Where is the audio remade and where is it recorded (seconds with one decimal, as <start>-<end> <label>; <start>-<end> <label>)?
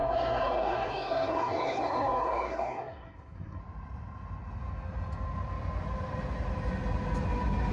0.0-3.6 remade; 3.6-7.7 recorded